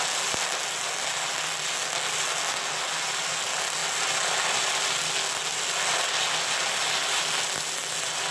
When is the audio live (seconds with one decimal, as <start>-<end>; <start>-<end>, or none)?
0.0-8.3